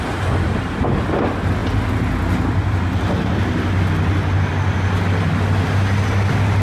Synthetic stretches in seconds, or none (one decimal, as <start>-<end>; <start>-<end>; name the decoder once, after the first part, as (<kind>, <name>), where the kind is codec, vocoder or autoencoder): none